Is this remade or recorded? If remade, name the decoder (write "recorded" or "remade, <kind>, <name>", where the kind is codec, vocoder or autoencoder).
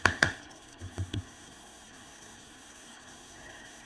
remade, codec, SNAC